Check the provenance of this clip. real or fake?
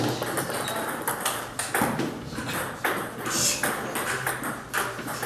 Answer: real